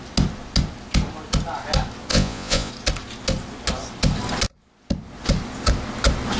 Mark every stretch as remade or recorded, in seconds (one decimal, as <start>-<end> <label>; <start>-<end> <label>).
0.0-2.1 recorded; 2.1-2.7 remade; 2.7-6.4 recorded